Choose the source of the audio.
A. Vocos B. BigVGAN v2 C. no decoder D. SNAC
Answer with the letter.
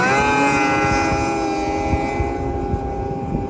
C